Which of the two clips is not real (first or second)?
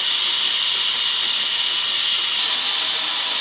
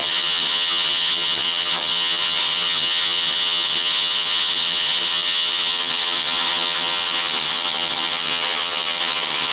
second